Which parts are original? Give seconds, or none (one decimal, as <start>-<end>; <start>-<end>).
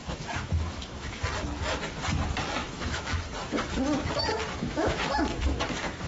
1.1-2.6; 3.2-4.3